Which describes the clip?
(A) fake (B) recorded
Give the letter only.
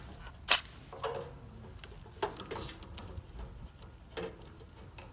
B